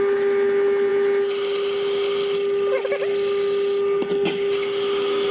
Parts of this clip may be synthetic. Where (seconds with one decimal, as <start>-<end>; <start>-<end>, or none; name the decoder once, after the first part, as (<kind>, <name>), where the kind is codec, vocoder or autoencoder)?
none